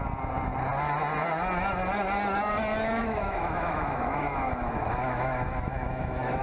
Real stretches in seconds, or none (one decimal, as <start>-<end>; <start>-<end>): 0.0-3.0